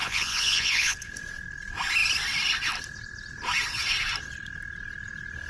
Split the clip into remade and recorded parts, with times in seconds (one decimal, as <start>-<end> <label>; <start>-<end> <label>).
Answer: 0.0-1.1 remade; 1.1-5.5 recorded